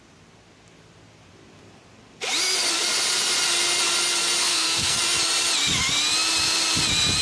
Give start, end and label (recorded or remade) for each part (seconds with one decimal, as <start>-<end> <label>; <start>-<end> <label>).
0.0-4.4 recorded; 4.4-5.0 remade; 5.0-7.2 recorded